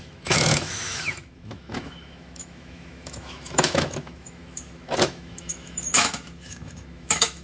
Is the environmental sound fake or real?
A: fake